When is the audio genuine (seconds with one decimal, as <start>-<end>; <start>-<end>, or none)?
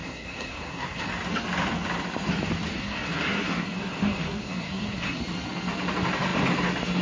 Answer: 1.1-2.8; 5.2-7.0